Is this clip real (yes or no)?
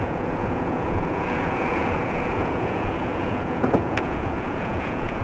no